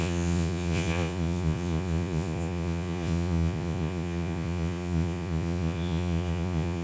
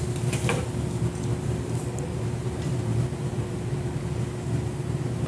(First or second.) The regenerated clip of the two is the first